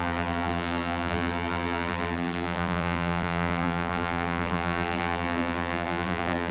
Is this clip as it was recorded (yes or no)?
no